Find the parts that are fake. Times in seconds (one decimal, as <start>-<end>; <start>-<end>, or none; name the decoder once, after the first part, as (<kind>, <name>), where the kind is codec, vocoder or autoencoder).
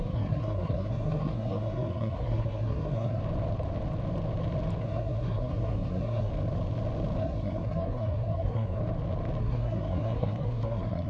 0.0-3.2 (codec, SNAC); 4.8-6.3; 7.2-8.8; 9.4-11.1